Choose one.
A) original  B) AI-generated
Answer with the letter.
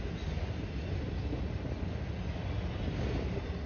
A